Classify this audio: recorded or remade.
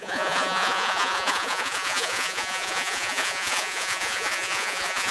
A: remade